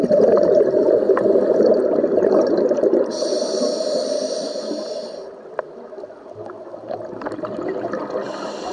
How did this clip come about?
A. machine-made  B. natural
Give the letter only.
B